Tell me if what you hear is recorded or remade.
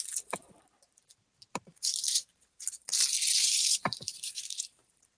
remade